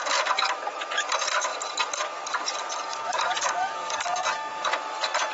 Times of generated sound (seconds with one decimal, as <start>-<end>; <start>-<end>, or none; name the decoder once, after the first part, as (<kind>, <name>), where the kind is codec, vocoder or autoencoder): 2.9-4.7 (codec, DAC)